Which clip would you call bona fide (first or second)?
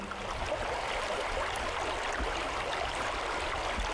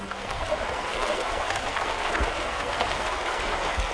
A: first